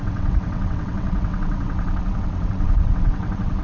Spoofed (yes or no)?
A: yes